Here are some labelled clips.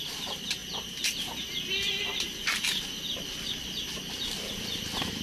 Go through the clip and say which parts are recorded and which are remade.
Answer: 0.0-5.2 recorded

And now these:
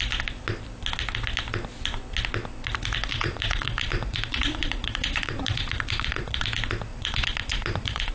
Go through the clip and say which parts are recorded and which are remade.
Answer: 0.0-3.1 recorded; 3.1-6.4 remade; 6.4-6.9 recorded; 6.9-8.1 remade